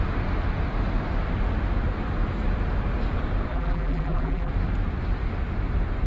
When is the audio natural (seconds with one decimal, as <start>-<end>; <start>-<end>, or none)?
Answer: 0.0-3.5; 4.5-6.1